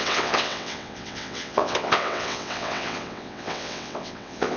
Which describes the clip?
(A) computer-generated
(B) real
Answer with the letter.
A